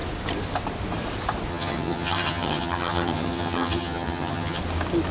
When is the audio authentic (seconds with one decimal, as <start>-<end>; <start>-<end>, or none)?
0.0-1.5; 4.6-5.1